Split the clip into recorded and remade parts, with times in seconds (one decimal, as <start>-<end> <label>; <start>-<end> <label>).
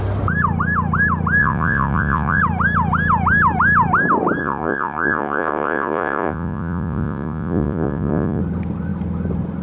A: 0.0-1.4 recorded; 1.4-2.4 remade; 2.4-4.4 recorded; 4.4-8.4 remade; 8.4-9.6 recorded